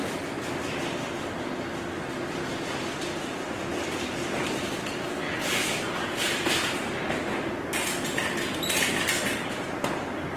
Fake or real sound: real